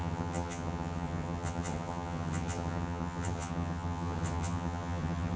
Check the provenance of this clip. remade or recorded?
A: remade